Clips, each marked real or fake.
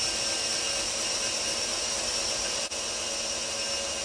real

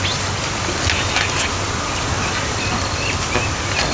real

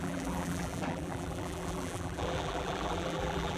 fake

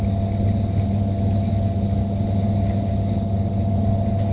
real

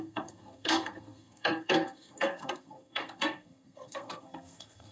fake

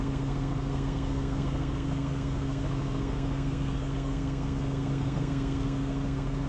fake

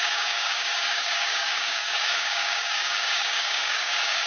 fake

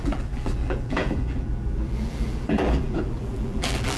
fake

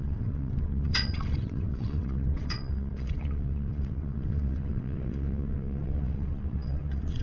fake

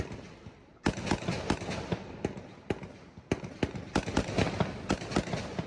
real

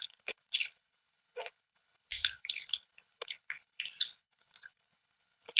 fake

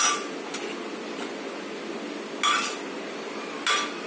real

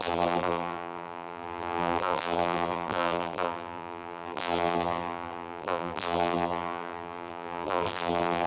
fake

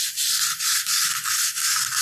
real